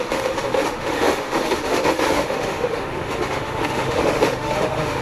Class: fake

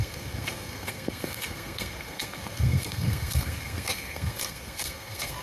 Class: fake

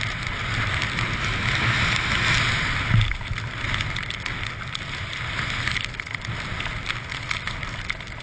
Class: real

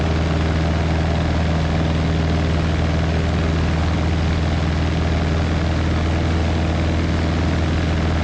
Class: real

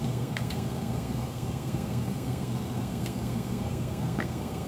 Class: fake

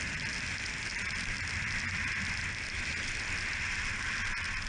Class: real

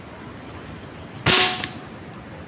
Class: real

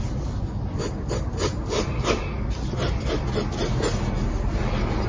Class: real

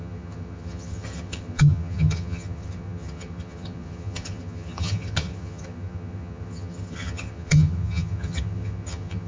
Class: fake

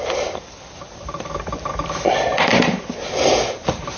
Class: fake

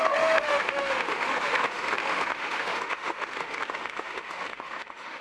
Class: fake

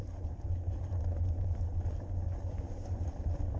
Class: real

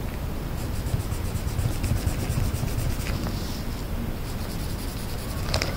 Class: real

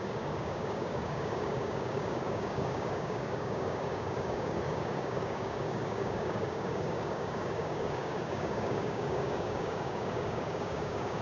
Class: fake